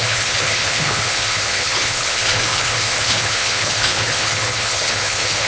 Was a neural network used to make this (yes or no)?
yes